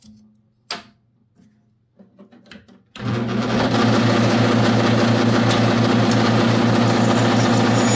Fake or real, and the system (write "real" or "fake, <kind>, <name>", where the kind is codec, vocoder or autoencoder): real